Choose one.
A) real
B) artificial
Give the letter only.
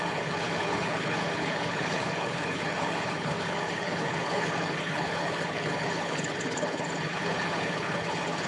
B